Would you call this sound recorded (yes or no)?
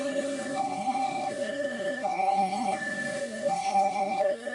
no